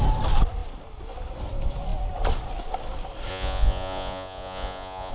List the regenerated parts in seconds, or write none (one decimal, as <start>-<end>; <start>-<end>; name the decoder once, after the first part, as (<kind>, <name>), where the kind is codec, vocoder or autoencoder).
3.3-5.1 (vocoder, Vocos)